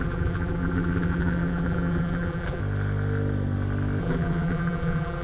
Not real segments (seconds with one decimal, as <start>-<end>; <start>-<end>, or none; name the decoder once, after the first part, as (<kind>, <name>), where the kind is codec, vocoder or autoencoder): 0.0-2.6 (vocoder, BigVGAN v2); 4.0-5.2